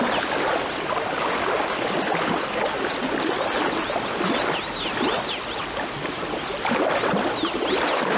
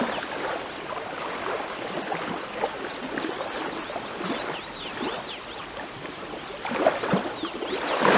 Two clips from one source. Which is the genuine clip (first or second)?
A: first